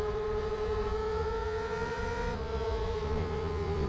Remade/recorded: remade